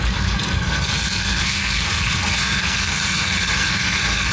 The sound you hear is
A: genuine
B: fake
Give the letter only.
B